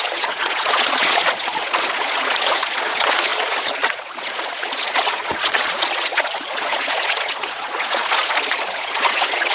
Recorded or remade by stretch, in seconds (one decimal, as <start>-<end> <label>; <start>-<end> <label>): 0.0-9.5 remade

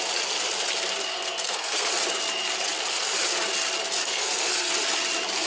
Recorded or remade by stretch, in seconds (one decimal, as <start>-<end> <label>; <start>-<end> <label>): 0.0-1.1 recorded; 1.1-1.9 remade; 1.9-4.0 recorded; 4.0-4.7 remade; 4.7-5.5 recorded

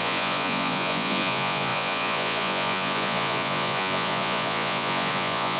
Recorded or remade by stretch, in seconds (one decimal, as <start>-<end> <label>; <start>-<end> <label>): 0.0-5.6 remade